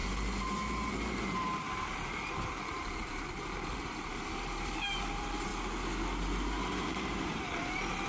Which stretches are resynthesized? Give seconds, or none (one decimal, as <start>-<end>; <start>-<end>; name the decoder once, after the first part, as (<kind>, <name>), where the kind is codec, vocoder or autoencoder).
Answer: 0.0-5.5 (vocoder, BigVGAN v2); 6.7-8.1